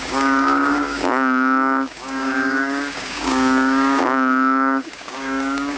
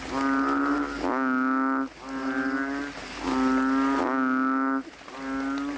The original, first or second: second